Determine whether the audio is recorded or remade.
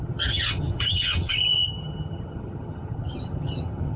remade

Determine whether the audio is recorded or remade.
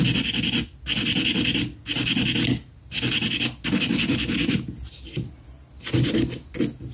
recorded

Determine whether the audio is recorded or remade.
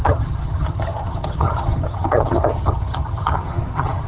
remade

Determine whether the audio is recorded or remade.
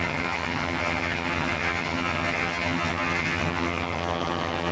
remade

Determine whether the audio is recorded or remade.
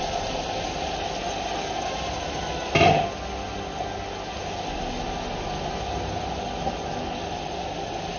recorded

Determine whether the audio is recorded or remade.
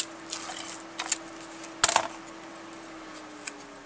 recorded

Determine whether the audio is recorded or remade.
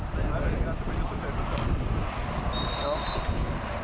recorded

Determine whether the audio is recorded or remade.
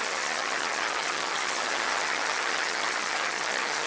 remade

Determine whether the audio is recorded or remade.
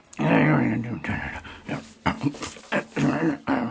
recorded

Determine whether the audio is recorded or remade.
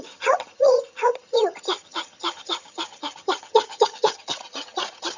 remade